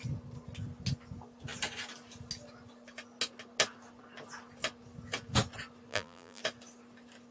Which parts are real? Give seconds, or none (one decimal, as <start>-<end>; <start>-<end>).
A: 0.0-5.9; 6.4-7.3